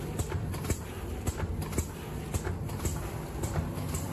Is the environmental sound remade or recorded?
remade